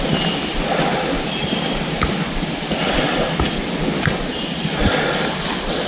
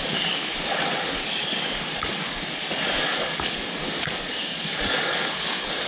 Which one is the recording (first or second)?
first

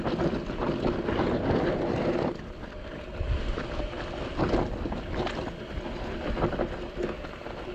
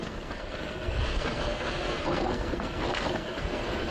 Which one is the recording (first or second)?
first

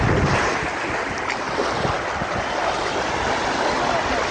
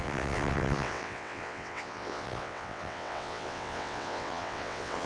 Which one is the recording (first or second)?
first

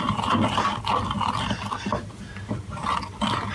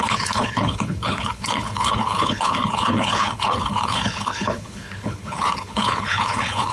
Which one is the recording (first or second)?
first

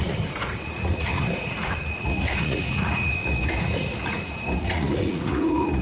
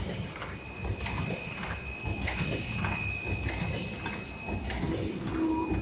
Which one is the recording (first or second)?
second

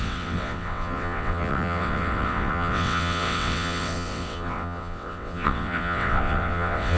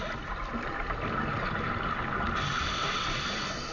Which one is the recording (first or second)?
second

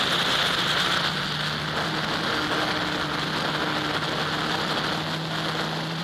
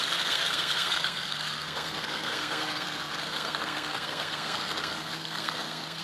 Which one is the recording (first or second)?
first